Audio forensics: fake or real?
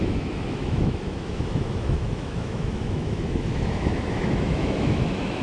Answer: fake